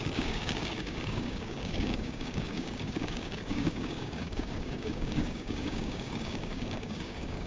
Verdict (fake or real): fake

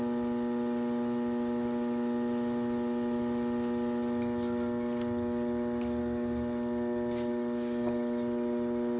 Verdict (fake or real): real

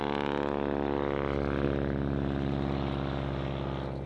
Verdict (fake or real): real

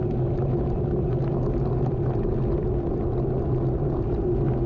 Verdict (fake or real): real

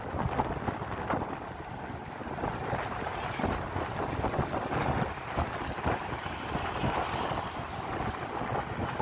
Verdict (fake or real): real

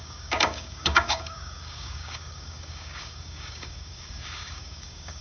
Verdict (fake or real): fake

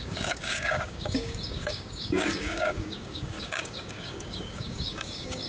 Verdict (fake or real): fake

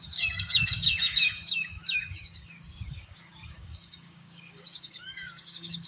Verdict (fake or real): fake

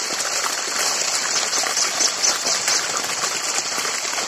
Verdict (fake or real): real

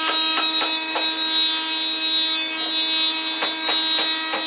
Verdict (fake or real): real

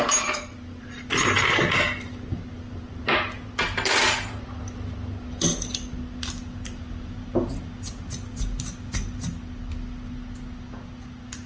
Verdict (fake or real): real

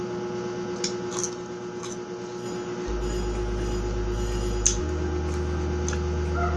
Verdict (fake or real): real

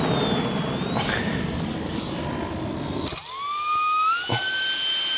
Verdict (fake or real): real